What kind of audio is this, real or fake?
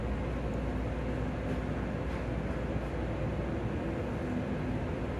real